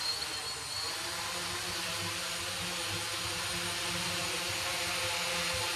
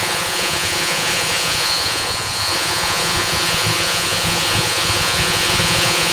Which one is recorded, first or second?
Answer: first